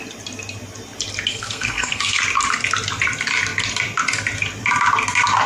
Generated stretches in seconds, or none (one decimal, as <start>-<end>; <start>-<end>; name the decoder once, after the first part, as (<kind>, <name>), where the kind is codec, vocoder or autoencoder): 1.3-2.2 (codec, SNAC)